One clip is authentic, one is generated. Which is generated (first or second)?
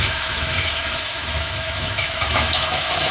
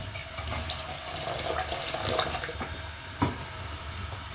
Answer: first